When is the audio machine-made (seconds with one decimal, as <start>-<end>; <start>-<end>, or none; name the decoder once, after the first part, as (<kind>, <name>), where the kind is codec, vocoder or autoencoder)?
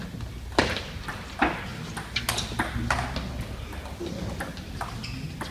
none